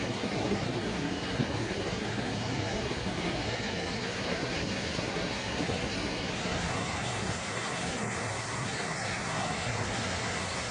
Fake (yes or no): yes